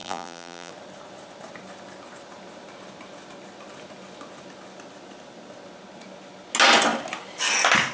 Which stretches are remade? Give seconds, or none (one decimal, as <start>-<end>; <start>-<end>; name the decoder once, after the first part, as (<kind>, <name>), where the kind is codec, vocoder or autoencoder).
0.0-0.7 (vocoder, BigVGAN v2)